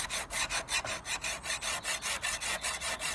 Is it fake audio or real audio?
real